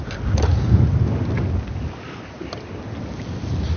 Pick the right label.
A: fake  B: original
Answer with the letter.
B